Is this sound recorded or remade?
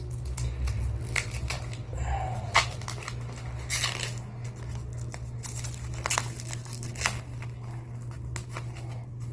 recorded